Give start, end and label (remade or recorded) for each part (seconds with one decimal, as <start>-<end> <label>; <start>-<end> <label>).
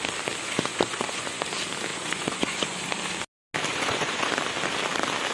0.0-0.7 recorded; 0.7-1.4 remade; 1.4-1.9 recorded; 1.9-2.8 remade; 2.8-3.7 recorded; 3.7-4.3 remade; 4.3-5.3 recorded